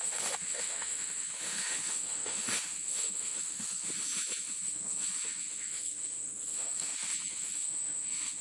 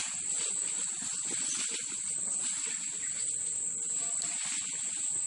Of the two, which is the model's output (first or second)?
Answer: first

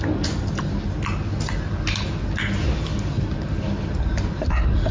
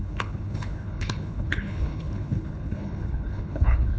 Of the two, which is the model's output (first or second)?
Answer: second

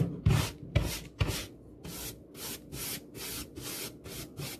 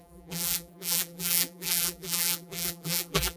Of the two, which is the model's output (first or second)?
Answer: second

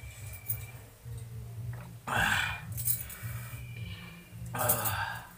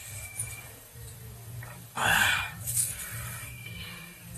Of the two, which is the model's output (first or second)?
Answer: second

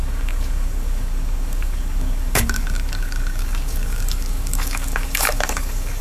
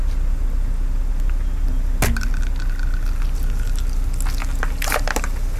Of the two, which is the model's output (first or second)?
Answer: first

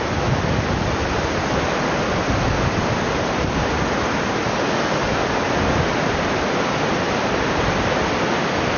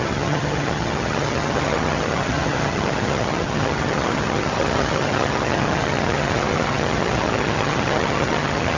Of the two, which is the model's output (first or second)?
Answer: second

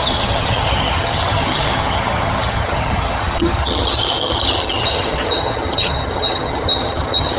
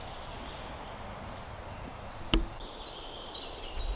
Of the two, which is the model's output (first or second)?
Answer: first